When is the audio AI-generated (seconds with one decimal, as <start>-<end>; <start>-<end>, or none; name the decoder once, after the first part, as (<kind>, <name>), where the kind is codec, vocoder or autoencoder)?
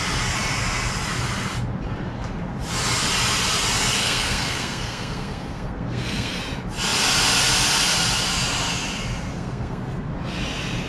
4.0-6.4 (codec, SNAC); 9.3-10.1